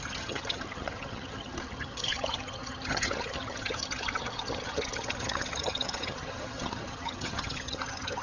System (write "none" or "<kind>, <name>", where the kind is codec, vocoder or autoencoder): vocoder, HiFi-GAN